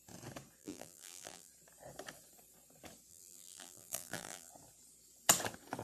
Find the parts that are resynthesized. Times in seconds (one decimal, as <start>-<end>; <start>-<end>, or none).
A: 0.6-1.5; 3.1-4.5